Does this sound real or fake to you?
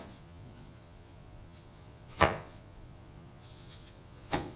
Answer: fake